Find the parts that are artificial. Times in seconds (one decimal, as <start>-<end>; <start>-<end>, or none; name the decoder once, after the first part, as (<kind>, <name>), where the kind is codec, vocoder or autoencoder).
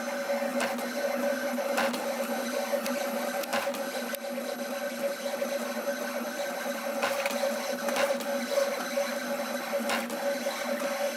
none